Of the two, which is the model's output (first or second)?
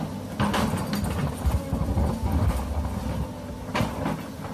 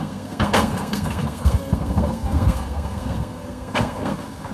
second